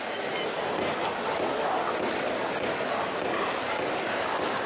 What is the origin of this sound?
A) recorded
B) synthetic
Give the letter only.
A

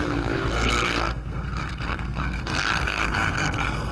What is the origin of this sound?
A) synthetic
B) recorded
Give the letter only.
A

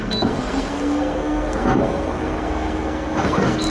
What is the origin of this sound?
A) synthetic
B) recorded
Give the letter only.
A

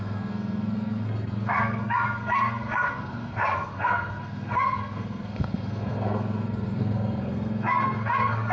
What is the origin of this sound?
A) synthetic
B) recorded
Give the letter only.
A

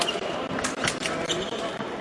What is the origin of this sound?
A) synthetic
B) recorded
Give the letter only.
B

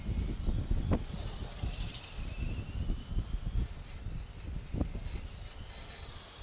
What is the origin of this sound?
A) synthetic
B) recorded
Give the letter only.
B